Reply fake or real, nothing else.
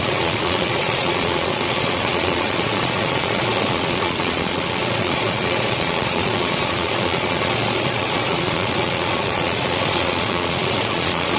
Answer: fake